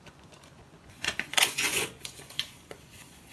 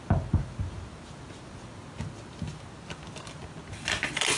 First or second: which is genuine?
second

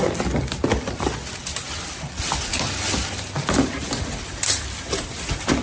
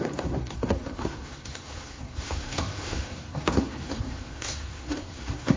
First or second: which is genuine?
first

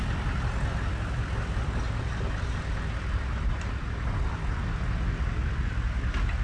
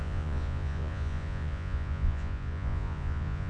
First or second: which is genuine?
first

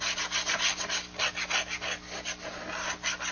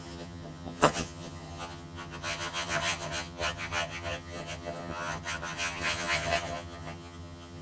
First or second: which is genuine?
first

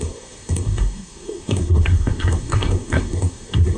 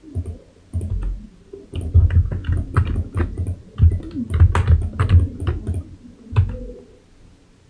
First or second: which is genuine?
second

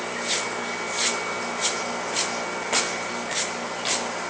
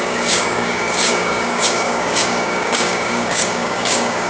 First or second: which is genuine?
first